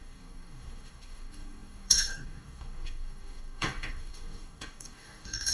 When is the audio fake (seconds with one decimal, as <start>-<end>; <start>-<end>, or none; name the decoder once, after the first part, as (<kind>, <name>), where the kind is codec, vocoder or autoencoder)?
0.0-5.5 (codec, DAC)